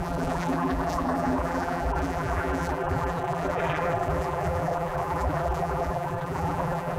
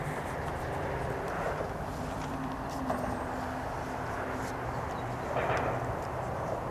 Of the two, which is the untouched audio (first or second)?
second